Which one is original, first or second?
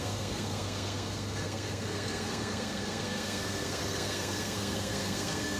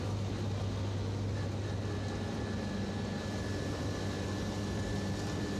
second